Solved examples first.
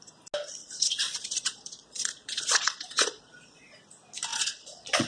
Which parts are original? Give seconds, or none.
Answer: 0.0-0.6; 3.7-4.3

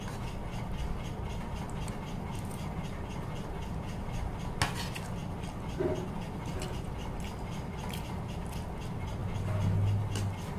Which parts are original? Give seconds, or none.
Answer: 0.0-10.6

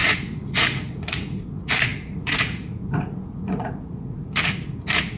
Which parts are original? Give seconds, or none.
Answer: none

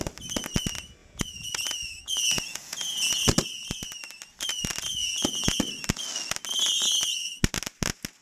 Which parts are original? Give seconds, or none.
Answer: 0.0-1.0; 3.2-5.0; 5.6-8.2